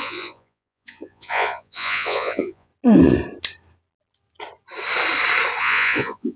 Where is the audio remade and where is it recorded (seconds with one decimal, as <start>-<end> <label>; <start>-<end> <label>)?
0.0-2.7 remade; 2.7-5.6 recorded; 5.6-6.4 remade